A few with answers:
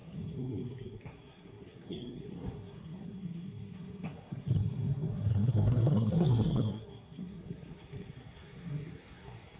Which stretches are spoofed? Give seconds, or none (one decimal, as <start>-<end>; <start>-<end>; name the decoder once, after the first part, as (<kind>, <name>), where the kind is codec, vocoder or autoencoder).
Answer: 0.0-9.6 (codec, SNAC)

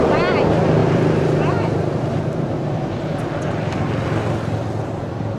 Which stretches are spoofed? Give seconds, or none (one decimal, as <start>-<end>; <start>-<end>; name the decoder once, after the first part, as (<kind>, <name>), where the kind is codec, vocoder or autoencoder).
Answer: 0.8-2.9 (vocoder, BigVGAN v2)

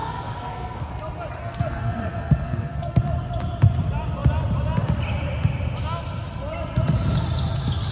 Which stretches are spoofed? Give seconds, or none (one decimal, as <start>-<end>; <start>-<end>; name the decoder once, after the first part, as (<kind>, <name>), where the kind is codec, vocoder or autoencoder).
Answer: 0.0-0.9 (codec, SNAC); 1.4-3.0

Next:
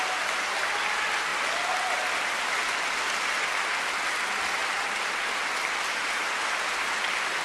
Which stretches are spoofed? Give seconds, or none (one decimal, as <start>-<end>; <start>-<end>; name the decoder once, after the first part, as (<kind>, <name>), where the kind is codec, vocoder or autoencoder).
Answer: 4.6-7.4 (vocoder, BigVGAN v2)

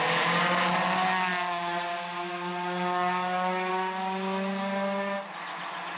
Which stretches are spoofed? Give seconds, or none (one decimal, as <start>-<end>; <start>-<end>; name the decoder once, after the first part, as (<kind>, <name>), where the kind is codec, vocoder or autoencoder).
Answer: none